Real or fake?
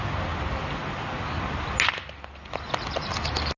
real